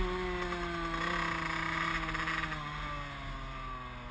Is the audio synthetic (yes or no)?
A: no